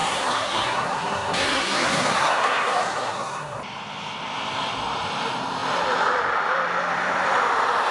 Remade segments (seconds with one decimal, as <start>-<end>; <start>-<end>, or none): 0.0-3.6